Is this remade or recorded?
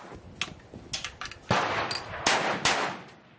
recorded